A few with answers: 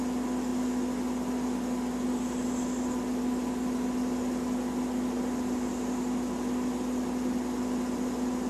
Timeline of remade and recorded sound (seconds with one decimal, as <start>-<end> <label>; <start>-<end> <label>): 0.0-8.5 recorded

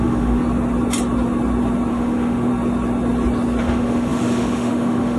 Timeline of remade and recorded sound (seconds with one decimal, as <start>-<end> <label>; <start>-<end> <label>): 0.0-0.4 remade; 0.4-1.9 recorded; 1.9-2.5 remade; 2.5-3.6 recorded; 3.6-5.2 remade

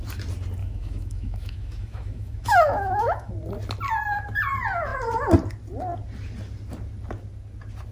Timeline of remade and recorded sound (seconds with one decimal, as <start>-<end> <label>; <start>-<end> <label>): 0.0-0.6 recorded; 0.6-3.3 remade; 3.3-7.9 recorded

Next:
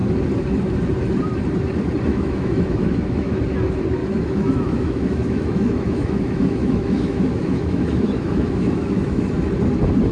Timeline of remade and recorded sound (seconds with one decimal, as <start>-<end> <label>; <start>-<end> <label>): 0.0-2.1 recorded; 2.1-3.4 remade; 3.4-4.0 recorded; 4.0-9.2 remade; 9.2-10.1 recorded

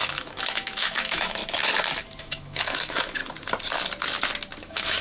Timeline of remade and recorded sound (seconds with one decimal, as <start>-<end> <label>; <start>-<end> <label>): 0.0-1.4 remade; 1.4-2.2 recorded; 2.2-3.2 remade; 3.2-4.6 recorded; 4.6-5.0 remade

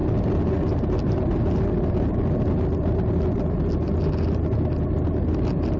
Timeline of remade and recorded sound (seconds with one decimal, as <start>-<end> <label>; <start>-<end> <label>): 0.0-5.8 recorded

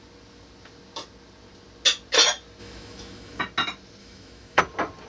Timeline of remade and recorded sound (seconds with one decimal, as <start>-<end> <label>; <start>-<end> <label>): 0.0-2.6 recorded; 2.6-3.4 remade; 3.4-4.0 recorded; 4.0-4.6 remade; 4.6-5.1 recorded

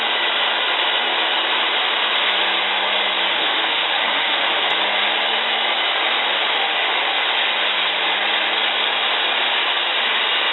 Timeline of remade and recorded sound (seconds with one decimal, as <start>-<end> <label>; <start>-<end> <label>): 0.0-3.3 recorded; 3.3-4.7 remade; 4.7-6.3 recorded; 6.3-6.9 remade; 6.9-10.5 recorded